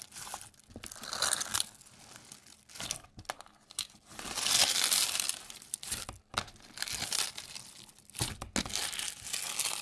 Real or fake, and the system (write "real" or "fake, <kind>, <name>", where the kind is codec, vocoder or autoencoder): real